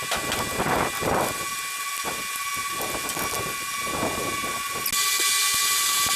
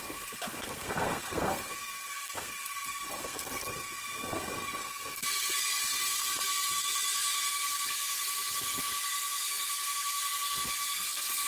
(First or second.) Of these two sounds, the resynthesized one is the second